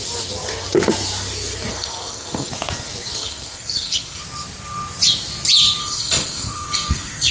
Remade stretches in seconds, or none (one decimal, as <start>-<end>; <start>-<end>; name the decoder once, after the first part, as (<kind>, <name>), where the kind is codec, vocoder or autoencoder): 1.7-2.5 (codec, SNAC); 3.2-4.2; 5.8-7.3